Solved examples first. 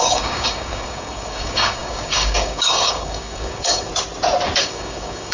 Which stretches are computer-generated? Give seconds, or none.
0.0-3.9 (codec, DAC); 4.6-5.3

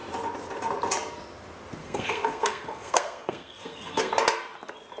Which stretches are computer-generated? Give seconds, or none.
1.8-4.1 (codec, SNAC)

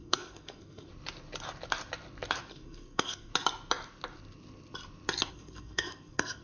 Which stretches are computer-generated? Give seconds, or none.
0.0-0.9 (codec, SNAC); 2.5-3.3; 5.3-6.4

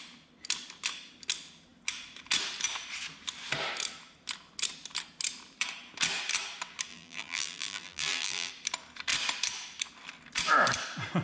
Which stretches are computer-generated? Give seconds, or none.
6.9-8.5 (vocoder, BigVGAN v2)

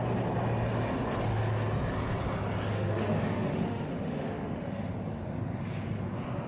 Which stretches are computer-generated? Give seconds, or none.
2.7-4.8 (autoencoder, DAC-VAE)

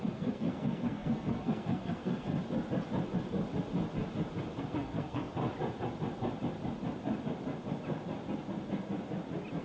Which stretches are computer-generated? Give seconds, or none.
0.0-2.3 (codec, SNAC); 4.6-5.4